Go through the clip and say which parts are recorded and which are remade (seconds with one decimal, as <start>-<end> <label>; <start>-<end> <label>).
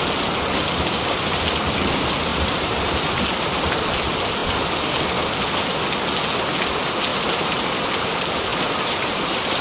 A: 0.0-2.3 recorded; 2.3-3.0 remade; 3.0-7.1 recorded; 7.1-7.7 remade; 7.7-8.5 recorded; 8.5-9.6 remade